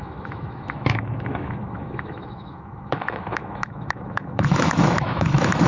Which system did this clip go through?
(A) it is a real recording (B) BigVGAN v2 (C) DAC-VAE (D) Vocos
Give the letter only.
C